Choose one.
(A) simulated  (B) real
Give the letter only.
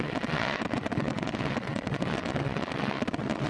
A